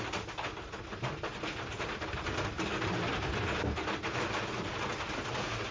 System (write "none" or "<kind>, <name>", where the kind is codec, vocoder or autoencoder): none